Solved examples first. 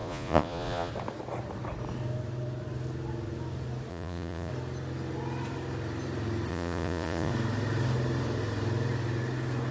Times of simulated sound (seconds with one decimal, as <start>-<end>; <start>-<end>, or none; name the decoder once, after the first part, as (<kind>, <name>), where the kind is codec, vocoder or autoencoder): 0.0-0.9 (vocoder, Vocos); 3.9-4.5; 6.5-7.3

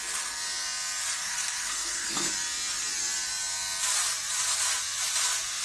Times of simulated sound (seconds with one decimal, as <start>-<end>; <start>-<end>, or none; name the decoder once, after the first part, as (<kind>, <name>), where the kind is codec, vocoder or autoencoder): 1.2-2.3 (codec, SNAC)

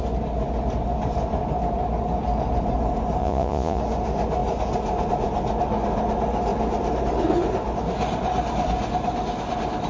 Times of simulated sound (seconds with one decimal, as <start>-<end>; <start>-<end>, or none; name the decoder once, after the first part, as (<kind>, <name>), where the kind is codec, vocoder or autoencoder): 3.2-3.8 (vocoder, Vocos)